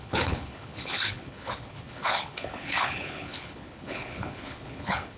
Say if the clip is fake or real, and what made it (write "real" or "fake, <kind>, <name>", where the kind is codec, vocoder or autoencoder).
fake, codec, HILCodec